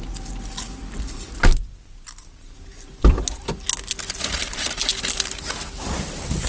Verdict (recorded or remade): recorded